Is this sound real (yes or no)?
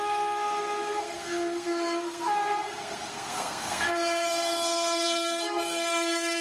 no